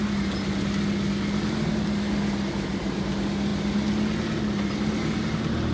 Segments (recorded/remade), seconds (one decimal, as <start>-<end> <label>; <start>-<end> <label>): 0.0-5.7 recorded